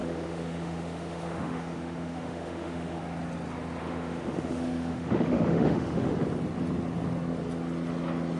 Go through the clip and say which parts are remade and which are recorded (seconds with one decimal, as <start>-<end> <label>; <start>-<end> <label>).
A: 0.0-3.0 remade; 3.0-3.8 recorded; 3.8-6.1 remade; 6.1-8.4 recorded